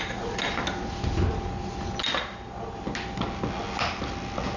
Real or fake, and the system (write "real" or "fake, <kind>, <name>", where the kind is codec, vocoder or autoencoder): real